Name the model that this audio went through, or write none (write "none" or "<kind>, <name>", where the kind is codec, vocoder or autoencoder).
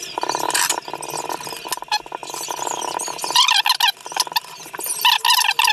none